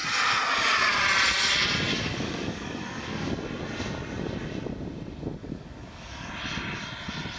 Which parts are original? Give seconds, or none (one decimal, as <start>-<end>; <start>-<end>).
0.0-1.9; 3.3-5.4; 6.3-7.4